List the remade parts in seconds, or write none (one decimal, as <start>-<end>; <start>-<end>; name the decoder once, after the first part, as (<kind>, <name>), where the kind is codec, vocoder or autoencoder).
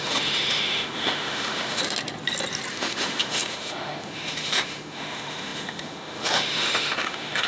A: 0.0-1.8 (autoencoder, DAC-VAE); 2.7-7.5